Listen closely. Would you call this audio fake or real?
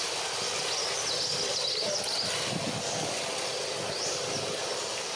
real